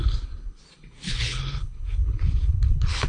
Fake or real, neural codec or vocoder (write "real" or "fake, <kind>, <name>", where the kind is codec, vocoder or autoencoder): fake, codec, HILCodec